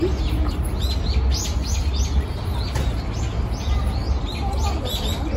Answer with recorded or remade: recorded